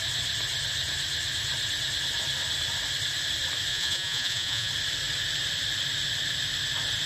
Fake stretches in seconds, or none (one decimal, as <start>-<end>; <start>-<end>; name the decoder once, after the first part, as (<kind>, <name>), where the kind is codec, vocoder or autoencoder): 3.7-4.7 (vocoder, Vocos)

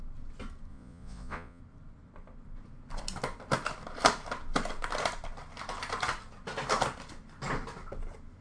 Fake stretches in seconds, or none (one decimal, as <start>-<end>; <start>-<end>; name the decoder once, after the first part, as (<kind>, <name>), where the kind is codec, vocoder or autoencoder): 0.7-1.6 (vocoder, Vocos)